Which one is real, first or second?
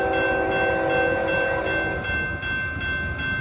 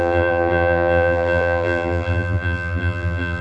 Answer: first